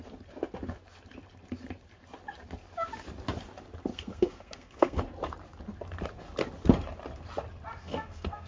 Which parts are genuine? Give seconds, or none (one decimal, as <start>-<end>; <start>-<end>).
0.0-3.9; 5.0-7.8